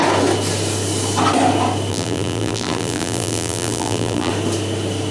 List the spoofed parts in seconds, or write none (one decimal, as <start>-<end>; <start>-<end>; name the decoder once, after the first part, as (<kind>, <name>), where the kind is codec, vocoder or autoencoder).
1.9-4.3 (vocoder, BigVGAN v2)

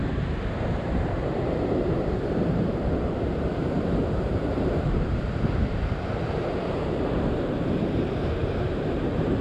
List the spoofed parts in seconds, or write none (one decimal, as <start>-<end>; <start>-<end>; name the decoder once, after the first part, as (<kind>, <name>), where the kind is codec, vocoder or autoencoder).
0.0-9.4 (vocoder, BigVGAN v2)

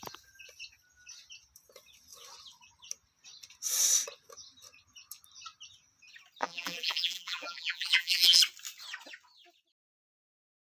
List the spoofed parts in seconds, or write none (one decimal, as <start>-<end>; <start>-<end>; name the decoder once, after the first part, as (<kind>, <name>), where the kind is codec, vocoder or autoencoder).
6.4-8.4 (vocoder, BigVGAN v2)

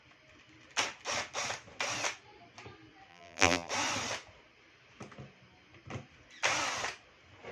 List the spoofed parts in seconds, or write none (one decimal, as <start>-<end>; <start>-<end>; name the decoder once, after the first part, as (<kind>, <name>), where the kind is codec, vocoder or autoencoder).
3.1-3.7 (vocoder, BigVGAN v2)

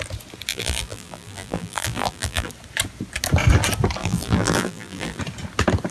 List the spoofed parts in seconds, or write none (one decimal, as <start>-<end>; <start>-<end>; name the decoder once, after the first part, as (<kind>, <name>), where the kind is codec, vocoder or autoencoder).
0.5-2.5 (vocoder, BigVGAN v2); 4.0-5.2

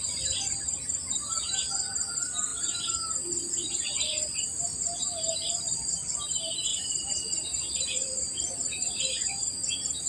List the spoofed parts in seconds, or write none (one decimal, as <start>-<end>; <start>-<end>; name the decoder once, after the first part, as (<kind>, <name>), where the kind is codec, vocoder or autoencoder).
6.7-9.0 (vocoder, BigVGAN v2)